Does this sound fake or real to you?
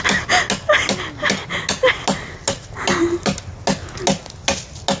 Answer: real